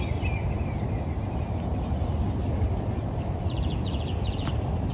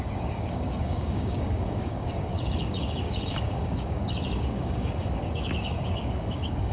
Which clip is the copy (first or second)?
second